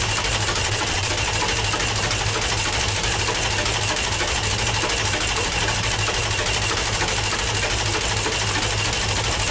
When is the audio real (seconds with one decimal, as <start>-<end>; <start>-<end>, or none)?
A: 0.0-0.6; 1.1-9.5